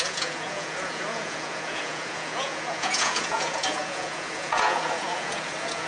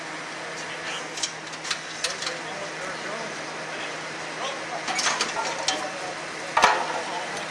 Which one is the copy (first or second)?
first